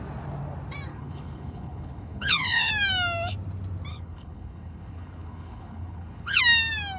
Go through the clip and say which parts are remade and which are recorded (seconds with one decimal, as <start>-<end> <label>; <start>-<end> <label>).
0.0-0.9 recorded; 0.9-2.7 remade; 2.7-3.9 recorded; 3.9-6.4 remade; 6.4-7.0 recorded